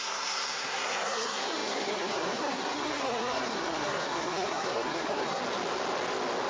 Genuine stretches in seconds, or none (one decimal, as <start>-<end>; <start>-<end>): 5.4-6.5

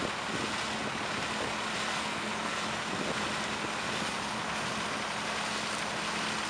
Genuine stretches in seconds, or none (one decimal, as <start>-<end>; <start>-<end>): 0.0-1.9; 2.6-6.5

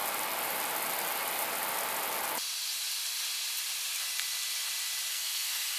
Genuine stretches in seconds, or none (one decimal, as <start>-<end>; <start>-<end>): 0.0-5.1

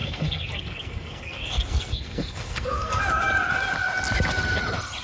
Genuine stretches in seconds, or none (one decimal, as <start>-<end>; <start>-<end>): 3.0-5.0

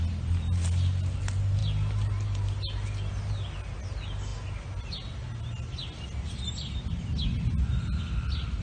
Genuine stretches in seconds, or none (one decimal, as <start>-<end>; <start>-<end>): 0.0-8.6

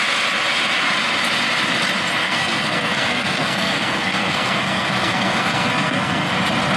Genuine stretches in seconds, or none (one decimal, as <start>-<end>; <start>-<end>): 0.0-2.2; 6.3-6.8

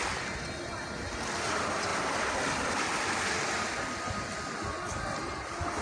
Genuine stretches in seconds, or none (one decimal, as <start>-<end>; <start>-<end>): 0.0-5.8

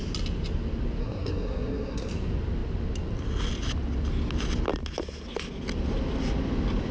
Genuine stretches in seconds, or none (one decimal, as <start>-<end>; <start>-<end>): 0.0-1.0; 2.1-6.9